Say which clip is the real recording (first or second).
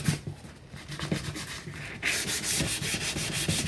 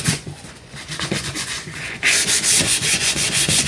first